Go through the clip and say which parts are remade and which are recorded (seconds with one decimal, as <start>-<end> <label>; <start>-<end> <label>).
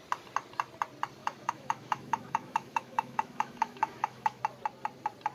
0.0-1.2 recorded; 1.2-4.4 remade; 4.4-5.3 recorded